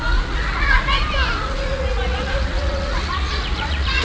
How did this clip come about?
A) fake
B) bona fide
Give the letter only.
A